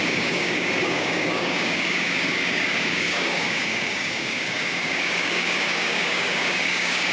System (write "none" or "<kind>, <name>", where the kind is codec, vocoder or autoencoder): codec, DAC